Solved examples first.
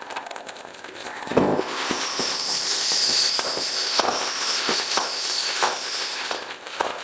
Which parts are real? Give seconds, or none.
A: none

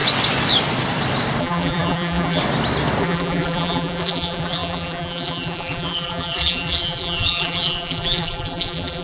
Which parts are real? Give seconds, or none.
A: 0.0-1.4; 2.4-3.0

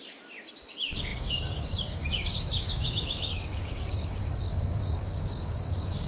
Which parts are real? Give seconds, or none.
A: 0.0-0.7

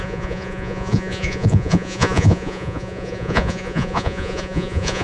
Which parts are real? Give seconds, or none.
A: none